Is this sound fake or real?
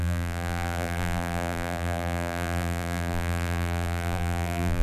fake